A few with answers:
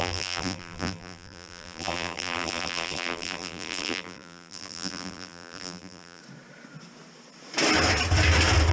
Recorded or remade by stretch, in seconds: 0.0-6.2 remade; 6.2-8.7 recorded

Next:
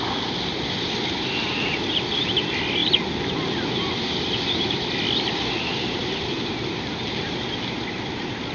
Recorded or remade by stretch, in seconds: 0.0-8.5 recorded

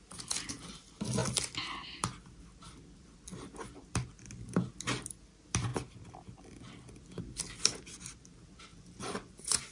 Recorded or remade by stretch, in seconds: 0.0-8.7 recorded; 8.7-9.7 remade

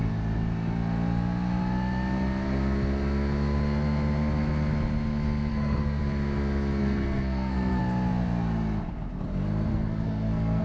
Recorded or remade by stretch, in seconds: 0.0-5.5 recorded; 5.5-6.0 remade; 6.0-6.8 recorded; 6.8-7.8 remade; 7.8-9.7 recorded; 9.7-10.6 remade

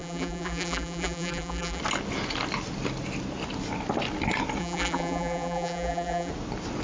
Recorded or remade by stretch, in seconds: 0.0-1.8 remade; 1.8-4.6 recorded; 4.6-6.3 remade; 6.3-6.8 recorded

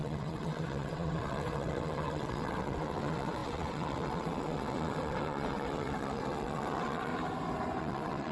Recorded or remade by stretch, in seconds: 0.0-7.1 remade; 7.1-7.8 recorded; 7.8-8.3 remade

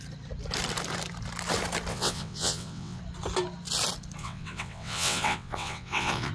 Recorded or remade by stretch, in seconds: 0.0-1.9 recorded; 1.9-3.0 remade; 3.0-4.2 recorded; 4.2-6.3 remade

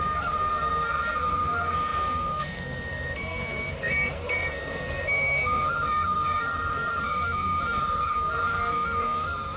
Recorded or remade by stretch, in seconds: 0.0-9.6 remade